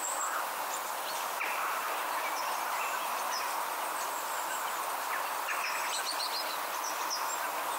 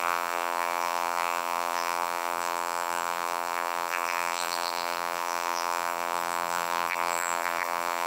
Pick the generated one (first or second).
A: second